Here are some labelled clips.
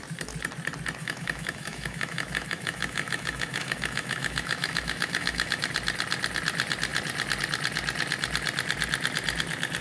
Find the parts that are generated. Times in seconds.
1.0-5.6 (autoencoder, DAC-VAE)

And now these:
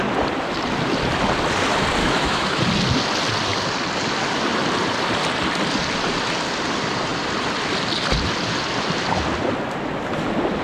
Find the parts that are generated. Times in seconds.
2.0-2.6 (autoencoder, DAC-VAE)

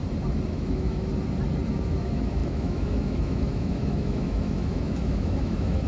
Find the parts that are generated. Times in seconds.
0.5-1.1 (autoencoder, DAC-VAE); 1.7-5.9

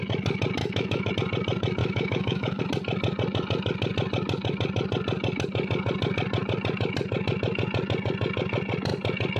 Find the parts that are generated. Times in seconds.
0.6-1.1 (autoencoder, DAC-VAE); 1.8-2.6

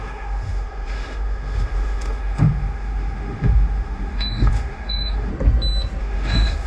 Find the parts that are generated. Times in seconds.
0.0-5.3 (autoencoder, DAC-VAE); 6.0-6.7

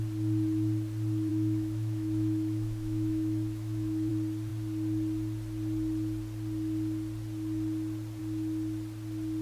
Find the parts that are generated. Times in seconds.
1.3-4.1 (autoencoder, DAC-VAE)

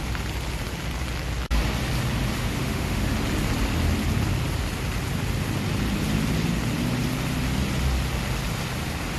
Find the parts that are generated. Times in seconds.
2.4-3.1 (autoencoder, DAC-VAE)